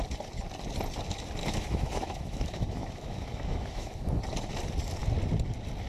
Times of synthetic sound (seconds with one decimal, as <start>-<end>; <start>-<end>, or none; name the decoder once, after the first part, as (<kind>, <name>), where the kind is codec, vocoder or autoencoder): 1.4-4.2 (autoencoder, DAC-VAE)